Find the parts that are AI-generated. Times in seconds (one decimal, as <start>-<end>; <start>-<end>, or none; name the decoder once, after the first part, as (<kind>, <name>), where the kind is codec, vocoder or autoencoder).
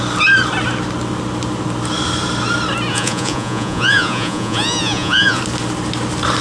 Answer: 2.9-5.4 (vocoder, Vocos)